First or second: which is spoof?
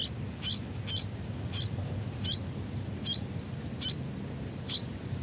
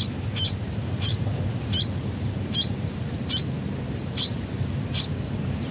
second